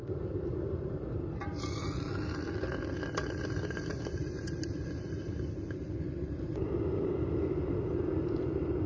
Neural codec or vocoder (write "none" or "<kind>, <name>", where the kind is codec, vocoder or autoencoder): none